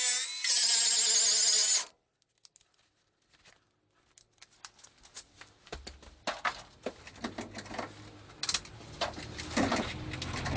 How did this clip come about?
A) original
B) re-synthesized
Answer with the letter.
A